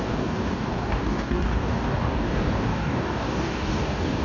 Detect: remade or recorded remade